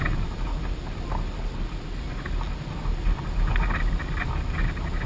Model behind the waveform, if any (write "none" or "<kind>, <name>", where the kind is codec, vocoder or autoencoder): none